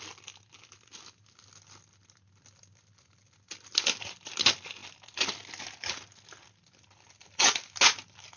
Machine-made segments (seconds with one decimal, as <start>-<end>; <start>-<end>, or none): none